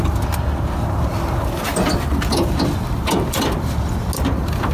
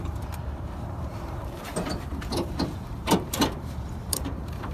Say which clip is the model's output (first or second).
second